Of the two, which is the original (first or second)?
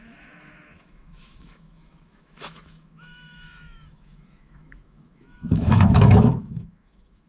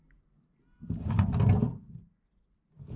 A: second